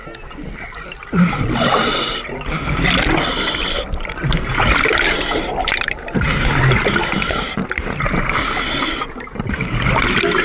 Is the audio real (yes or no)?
yes